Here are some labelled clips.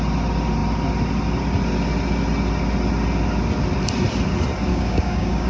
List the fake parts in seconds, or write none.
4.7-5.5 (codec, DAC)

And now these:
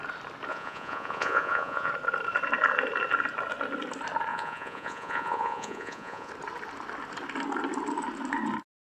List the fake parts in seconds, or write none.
0.5-1.9 (vocoder, Vocos); 4.3-6.3

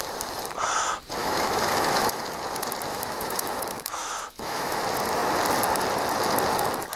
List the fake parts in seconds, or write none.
1.2-2.2 (autoencoder, DAC-VAE); 2.9-4.8

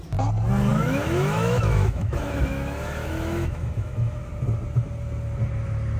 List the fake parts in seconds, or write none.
0.7-4.3 (autoencoder, DAC-VAE)

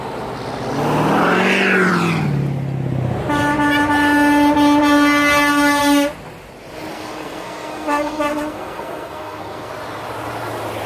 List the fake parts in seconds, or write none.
6.9-9.7 (codec, SNAC)

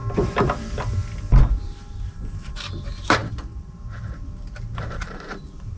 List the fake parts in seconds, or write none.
1.5-5.8 (vocoder, BigVGAN v2)